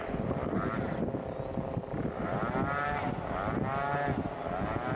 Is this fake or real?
real